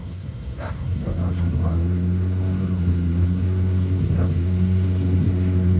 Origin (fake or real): fake